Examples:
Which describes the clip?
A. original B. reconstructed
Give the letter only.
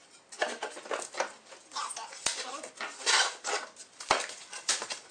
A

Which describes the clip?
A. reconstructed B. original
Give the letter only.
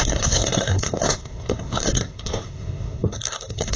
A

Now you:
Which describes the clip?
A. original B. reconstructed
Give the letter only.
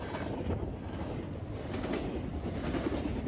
A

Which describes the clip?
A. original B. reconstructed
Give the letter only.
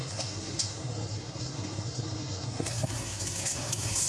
B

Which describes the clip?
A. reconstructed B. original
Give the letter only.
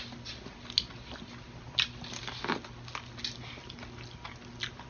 B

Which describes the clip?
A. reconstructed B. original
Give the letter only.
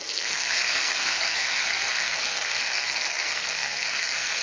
A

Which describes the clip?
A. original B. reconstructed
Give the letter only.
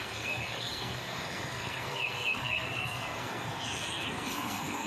B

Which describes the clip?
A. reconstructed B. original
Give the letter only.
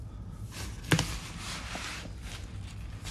B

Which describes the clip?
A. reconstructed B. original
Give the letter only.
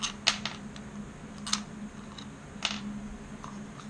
B